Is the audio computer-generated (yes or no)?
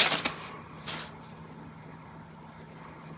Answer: no